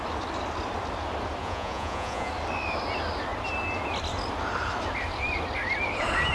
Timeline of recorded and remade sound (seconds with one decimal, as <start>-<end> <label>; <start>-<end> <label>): 0.0-1.4 recorded; 1.4-2.3 remade; 2.3-6.3 recorded